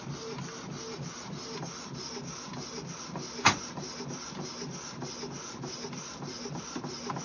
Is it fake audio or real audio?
real